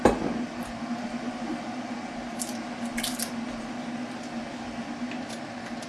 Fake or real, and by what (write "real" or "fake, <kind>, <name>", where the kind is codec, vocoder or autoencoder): real